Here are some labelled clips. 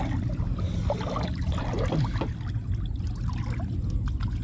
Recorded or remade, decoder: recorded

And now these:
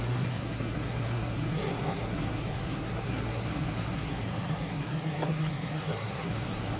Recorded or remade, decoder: remade, codec, SNAC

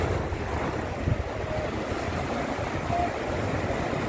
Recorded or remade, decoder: recorded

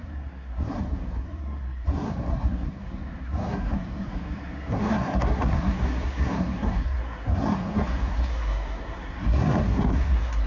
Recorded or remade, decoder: remade, codec, SNAC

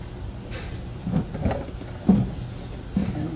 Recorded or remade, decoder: recorded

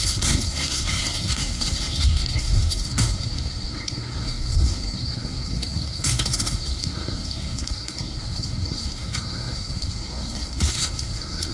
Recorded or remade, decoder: remade, codec, SNAC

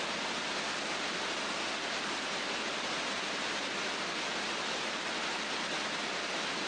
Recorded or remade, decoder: recorded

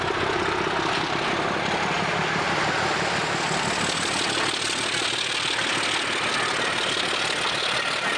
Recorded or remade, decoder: recorded